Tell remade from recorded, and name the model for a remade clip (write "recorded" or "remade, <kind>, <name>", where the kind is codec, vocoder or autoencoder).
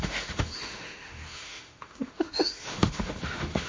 remade, autoencoder, DAC-VAE